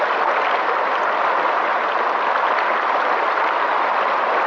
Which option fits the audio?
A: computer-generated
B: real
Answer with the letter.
B